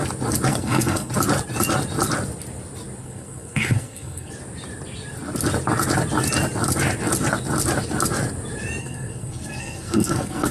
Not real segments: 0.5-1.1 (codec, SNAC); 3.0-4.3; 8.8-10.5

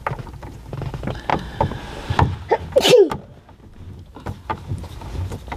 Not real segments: none

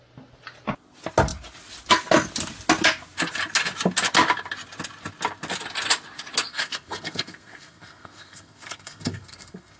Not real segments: 6.5-9.8 (codec, SNAC)

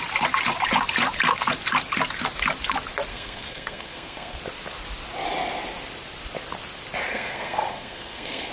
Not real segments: 3.1-4.4 (codec, SNAC); 7.1-8.5